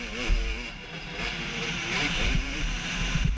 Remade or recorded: remade